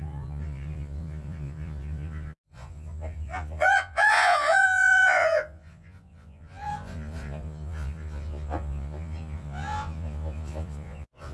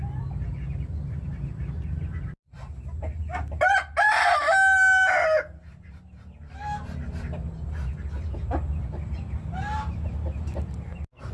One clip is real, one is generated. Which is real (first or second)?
second